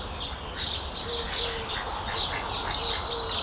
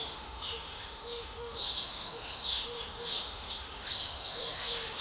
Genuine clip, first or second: first